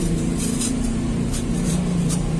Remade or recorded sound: remade